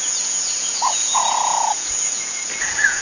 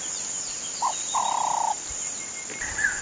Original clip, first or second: second